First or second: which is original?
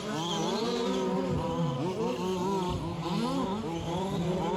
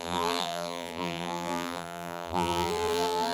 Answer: first